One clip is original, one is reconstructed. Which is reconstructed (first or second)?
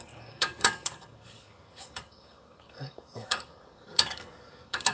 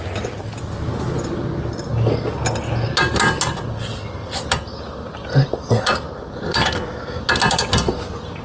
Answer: first